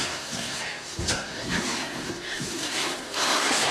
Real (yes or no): no